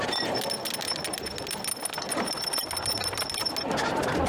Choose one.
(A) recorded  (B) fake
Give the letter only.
A